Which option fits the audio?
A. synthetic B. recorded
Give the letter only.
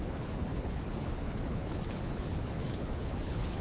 A